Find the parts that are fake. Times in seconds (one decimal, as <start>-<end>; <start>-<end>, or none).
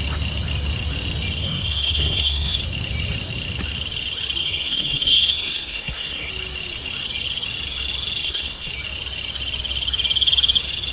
1.4-2.6; 4.4-6.3; 8.2-8.7